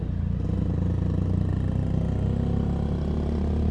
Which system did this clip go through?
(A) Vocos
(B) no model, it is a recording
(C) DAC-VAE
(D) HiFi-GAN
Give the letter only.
B